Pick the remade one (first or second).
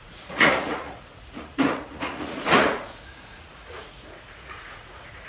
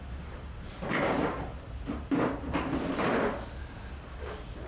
first